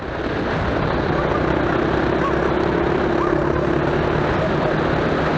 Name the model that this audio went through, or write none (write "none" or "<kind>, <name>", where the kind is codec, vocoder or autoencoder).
none